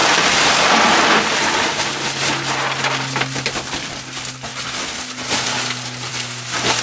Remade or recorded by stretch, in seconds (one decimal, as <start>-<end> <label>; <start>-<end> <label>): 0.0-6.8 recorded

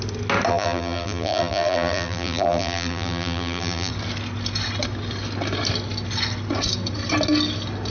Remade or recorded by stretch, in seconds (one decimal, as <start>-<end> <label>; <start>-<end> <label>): 0.0-0.5 recorded; 0.5-3.9 remade; 3.9-7.9 recorded

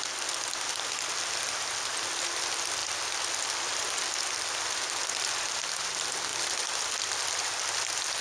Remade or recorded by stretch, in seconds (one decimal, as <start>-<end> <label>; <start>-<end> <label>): 0.0-8.2 recorded